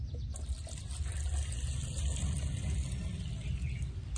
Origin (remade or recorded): recorded